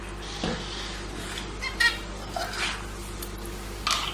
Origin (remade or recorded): recorded